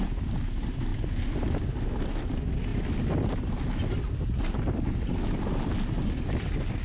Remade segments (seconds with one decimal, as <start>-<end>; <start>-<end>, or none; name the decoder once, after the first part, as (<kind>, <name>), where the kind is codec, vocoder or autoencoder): none